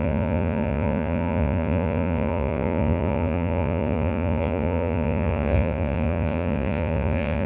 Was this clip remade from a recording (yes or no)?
yes